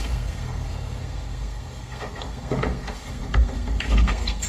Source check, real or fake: fake